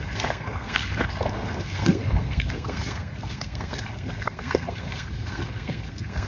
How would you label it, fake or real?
fake